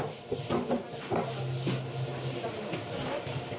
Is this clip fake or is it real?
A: real